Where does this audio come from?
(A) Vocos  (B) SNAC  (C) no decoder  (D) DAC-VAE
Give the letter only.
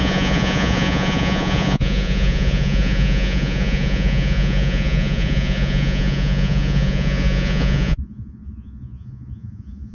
A